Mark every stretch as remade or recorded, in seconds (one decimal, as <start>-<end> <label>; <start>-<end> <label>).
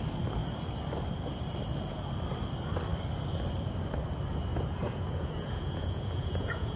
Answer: 0.0-4.5 recorded; 4.5-6.8 remade